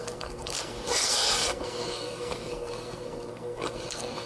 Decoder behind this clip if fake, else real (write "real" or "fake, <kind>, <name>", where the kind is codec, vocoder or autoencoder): fake, codec, SNAC